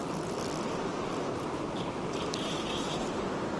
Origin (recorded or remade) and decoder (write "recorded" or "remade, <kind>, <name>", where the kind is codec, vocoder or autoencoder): recorded